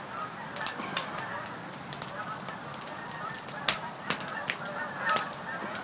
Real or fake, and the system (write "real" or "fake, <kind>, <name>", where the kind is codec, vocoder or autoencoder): real